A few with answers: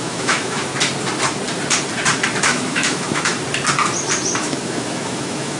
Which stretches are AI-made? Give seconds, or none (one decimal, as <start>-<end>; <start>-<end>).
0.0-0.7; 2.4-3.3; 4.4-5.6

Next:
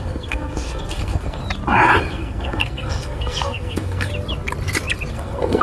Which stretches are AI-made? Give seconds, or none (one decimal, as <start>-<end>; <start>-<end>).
0.0-1.4; 2.1-4.1; 5.1-5.6

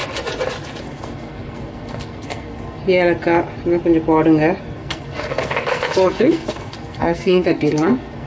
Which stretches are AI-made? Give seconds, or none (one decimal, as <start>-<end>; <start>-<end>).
0.8-2.8; 4.6-8.3